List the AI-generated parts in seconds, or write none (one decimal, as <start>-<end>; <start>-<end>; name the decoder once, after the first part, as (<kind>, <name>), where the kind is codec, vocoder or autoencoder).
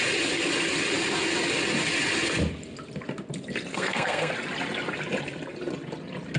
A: 3.7-4.3 (codec, SNAC)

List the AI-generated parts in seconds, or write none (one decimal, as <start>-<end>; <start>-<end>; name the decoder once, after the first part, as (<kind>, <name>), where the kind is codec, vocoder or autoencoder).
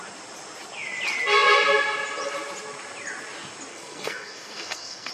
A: 3.7-5.1 (codec, SNAC)